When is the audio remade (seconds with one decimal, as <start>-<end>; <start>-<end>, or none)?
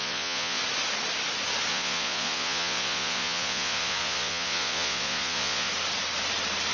0.0-0.6; 1.7-5.7